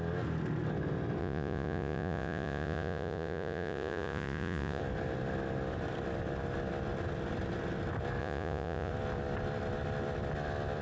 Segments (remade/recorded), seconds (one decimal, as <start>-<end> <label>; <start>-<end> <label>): 0.0-1.2 recorded; 1.2-4.8 remade; 4.8-8.2 recorded; 8.2-8.9 remade; 8.9-10.8 recorded